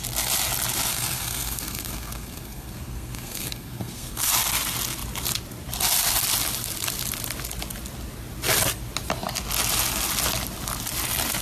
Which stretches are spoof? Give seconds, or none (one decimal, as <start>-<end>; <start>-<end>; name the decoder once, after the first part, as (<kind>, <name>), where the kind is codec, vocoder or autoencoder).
0.9-4.3 (codec, SNAC)

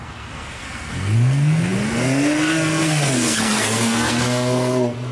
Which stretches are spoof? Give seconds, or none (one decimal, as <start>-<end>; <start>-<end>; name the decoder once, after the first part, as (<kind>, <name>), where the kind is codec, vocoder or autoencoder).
0.0-5.1 (codec, SNAC)

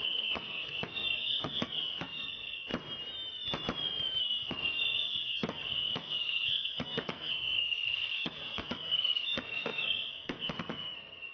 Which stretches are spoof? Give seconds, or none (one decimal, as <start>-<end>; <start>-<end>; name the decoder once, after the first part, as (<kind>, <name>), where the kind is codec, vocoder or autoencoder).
0.0-2.7 (codec, SNAC); 4.2-11.3

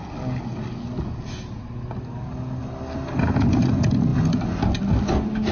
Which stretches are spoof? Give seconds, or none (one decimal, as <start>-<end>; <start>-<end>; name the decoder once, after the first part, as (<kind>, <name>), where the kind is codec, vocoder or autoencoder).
none